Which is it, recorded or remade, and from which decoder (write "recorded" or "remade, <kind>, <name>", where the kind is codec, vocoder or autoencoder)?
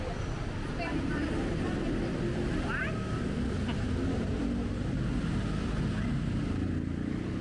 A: recorded